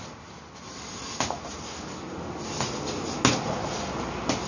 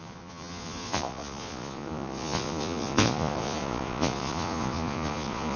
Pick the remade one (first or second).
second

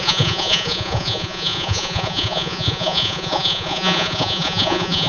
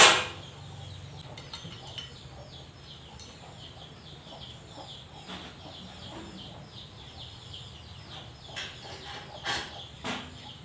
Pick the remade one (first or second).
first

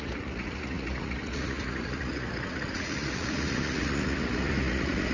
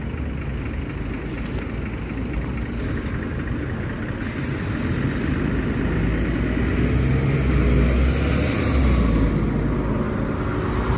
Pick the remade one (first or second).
first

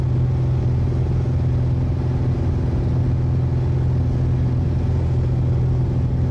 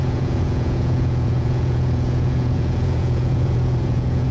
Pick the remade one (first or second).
second